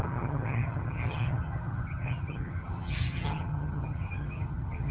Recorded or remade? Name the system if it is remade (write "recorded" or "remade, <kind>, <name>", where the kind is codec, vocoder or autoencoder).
remade, vocoder, HiFi-GAN